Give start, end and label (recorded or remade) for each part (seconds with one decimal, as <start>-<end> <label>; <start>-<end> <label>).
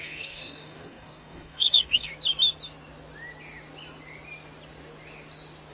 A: 0.0-2.1 remade; 2.1-5.7 recorded